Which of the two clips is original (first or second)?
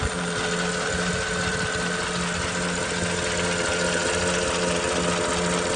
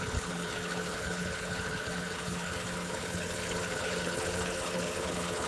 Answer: first